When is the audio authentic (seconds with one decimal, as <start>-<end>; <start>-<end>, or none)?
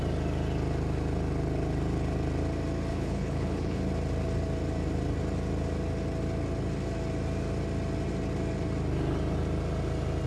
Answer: 0.0-2.9; 3.8-10.3